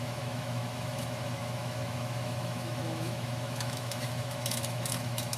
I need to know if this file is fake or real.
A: fake